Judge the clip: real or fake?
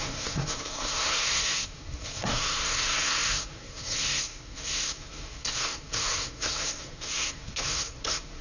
fake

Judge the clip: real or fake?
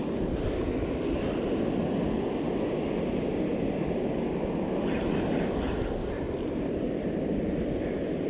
real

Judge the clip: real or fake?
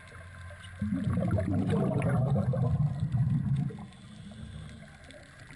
real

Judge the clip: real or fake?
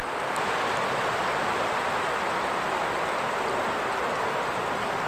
real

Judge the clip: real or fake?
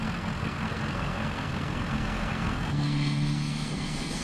fake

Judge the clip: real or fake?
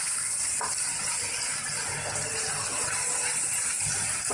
real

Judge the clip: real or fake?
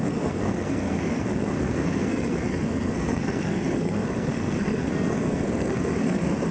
fake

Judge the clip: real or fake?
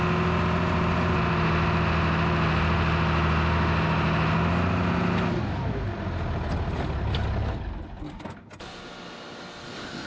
real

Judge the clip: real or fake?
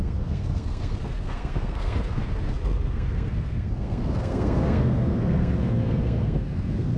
fake